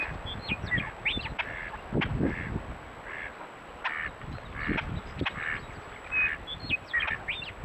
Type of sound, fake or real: real